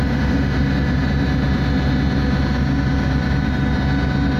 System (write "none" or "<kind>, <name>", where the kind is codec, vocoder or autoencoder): none